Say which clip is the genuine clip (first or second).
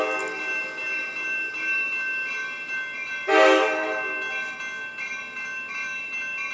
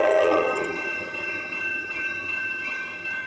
first